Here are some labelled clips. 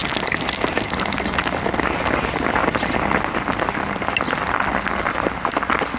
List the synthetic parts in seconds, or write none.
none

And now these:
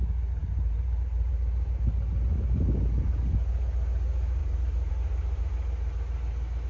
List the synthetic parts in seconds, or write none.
0.4-1.3; 4.4-4.9

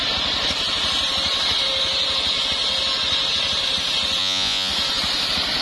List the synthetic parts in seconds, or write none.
4.2-4.7

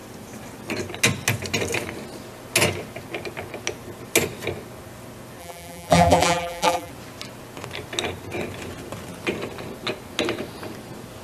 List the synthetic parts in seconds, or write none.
5.4-6.9

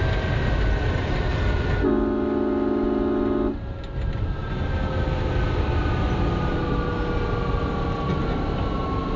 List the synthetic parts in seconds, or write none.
none